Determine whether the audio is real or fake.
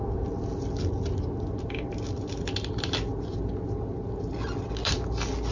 real